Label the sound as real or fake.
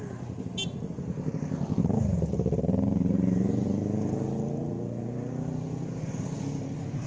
real